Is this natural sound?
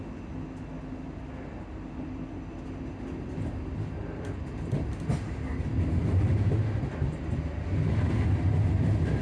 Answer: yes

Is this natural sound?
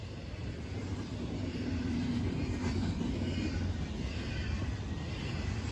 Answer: yes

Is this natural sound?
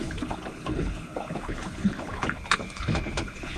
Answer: no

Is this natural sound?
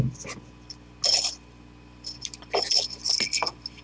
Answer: yes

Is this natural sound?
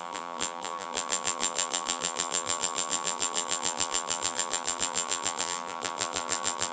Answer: no